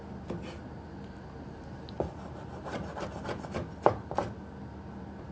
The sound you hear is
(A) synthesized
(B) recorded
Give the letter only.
B